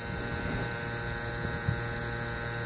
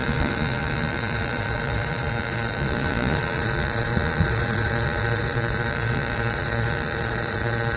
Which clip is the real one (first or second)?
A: first